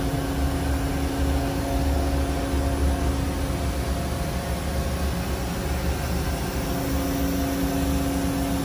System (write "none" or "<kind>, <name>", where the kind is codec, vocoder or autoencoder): none